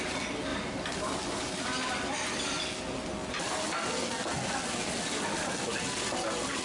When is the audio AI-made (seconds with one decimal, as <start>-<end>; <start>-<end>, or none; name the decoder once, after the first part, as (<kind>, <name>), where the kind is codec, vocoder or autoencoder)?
0.5-2.1 (vocoder, BigVGAN v2)

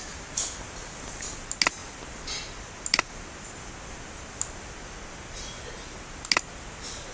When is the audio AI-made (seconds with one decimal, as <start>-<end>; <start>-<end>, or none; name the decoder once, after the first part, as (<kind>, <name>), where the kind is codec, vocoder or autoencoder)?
none

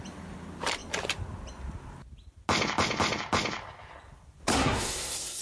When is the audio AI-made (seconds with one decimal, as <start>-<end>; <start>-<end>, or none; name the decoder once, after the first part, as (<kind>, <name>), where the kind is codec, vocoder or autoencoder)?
4.5-5.4 (codec, SNAC)

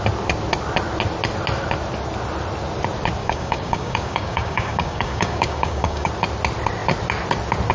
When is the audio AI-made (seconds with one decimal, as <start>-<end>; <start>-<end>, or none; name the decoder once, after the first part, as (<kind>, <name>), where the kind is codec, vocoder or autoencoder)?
3.2-6.1 (codec, DAC)

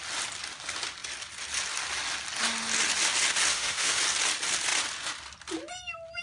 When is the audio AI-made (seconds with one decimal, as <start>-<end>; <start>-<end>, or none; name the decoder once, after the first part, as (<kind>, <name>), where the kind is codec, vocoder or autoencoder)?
3.5-4.0 (autoencoder, DAC-VAE)

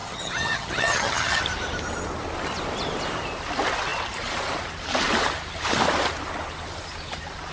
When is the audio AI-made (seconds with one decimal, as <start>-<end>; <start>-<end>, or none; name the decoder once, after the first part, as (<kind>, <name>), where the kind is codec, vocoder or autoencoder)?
0.0-1.4 (vocoder, HiFi-GAN)